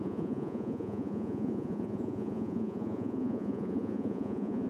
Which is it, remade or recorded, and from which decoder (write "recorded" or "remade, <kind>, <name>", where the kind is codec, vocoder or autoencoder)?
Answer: remade, vocoder, Vocos